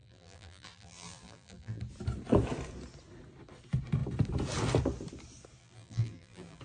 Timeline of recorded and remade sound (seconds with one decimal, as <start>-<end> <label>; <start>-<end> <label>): 0.0-1.8 remade; 1.8-5.6 recorded; 5.6-6.6 remade